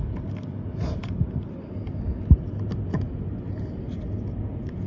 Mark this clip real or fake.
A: real